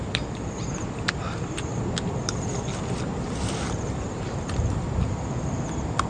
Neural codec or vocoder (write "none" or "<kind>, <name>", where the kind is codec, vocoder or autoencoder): none